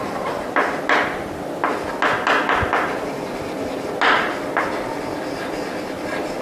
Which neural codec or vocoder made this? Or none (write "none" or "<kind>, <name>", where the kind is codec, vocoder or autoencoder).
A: none